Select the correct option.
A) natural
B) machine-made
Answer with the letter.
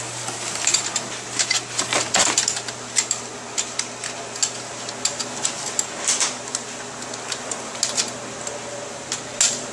A